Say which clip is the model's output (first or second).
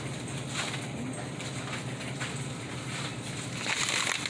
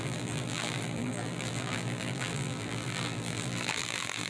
second